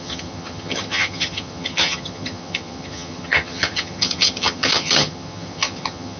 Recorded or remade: remade